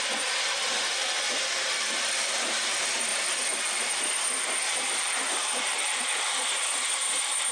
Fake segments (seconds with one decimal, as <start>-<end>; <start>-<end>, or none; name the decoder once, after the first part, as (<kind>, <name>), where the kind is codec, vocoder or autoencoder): 0.0-3.1 (vocoder, BigVGAN v2); 5.3-7.5

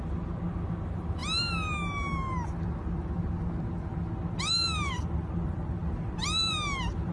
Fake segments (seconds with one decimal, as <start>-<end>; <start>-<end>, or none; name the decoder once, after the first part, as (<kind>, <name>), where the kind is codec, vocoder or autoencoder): 0.0-1.2 (vocoder, BigVGAN v2); 4.4-7.1

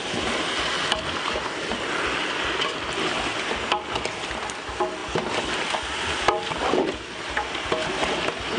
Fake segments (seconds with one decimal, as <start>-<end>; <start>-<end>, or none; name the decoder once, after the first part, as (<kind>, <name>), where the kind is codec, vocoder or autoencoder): 5.0-7.6 (vocoder, BigVGAN v2)

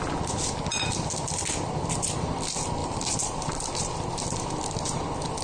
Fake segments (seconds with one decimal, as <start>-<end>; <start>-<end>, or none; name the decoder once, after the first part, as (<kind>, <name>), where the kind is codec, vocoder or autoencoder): 0.7-2.0 (vocoder, BigVGAN v2); 2.8-5.0

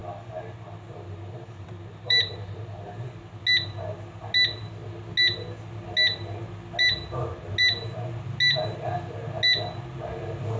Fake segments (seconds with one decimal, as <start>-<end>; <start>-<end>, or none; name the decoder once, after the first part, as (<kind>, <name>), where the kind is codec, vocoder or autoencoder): 0.0-3.1 (vocoder, BigVGAN v2)